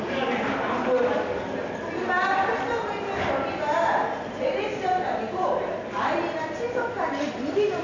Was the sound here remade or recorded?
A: recorded